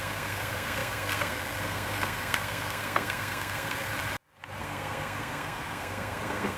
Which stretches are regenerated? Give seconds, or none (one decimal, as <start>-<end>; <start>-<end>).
0.0-3.9; 4.6-6.6